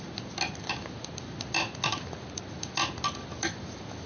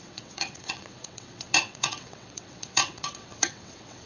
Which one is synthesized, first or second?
second